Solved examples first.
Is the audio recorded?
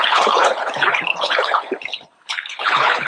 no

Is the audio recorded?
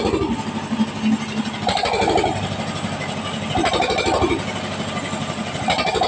yes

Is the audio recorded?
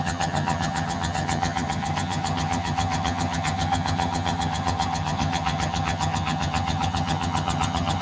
no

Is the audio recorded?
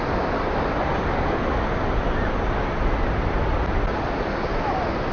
yes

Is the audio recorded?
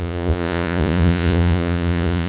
no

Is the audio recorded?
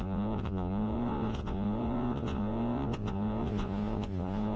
no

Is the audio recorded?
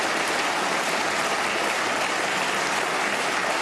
yes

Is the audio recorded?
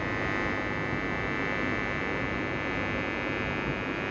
yes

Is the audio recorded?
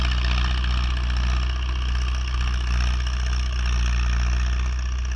yes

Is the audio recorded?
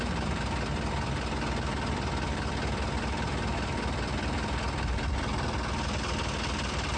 yes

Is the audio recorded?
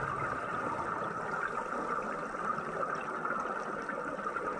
yes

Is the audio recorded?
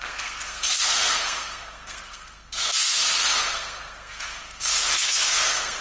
no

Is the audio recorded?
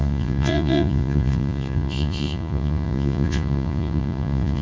no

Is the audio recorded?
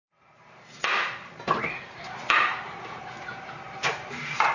no